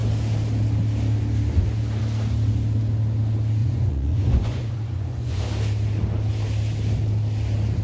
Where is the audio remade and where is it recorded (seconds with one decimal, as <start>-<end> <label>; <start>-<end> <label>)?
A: 0.0-3.6 recorded; 3.6-5.4 remade; 5.4-7.8 recorded